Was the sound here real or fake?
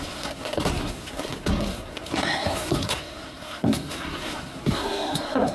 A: fake